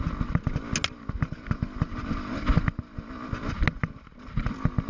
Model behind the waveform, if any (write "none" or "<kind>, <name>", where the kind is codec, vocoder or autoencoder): none